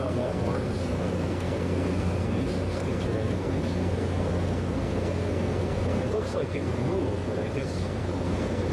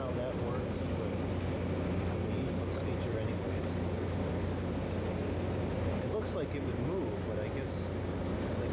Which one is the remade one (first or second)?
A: first